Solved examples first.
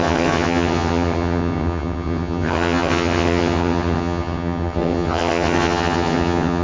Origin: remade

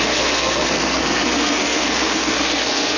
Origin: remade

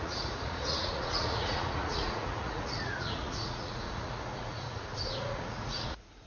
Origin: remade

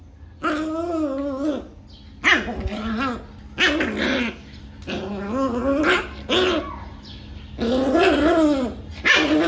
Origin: recorded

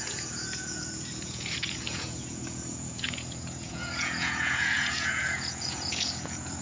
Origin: remade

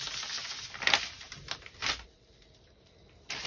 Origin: recorded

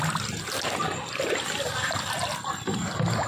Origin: recorded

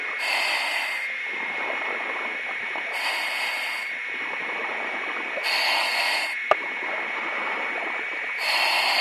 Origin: recorded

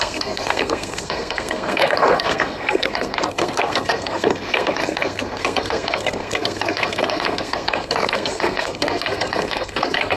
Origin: remade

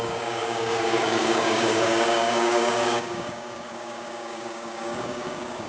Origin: remade